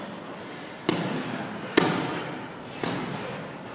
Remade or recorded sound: recorded